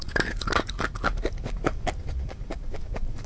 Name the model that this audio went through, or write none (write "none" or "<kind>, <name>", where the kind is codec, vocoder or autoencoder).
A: codec, DAC